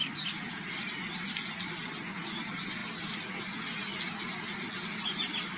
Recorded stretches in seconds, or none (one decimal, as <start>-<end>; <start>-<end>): 0.0-5.6